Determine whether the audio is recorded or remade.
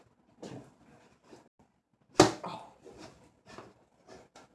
recorded